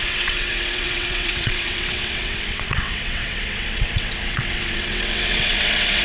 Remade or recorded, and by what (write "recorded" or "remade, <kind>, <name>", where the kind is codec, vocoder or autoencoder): remade, vocoder, WaveNeXt